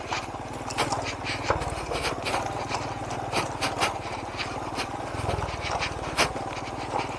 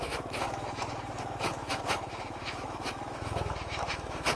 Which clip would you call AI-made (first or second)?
second